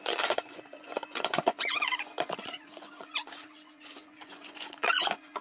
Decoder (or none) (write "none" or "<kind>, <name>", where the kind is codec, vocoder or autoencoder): vocoder, Vocos